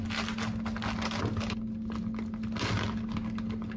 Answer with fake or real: real